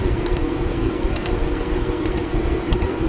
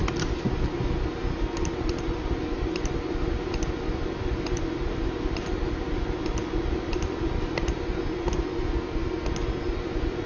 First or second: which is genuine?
second